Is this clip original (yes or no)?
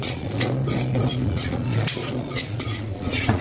no